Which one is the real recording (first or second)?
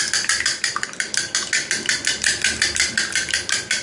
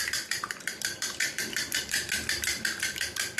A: first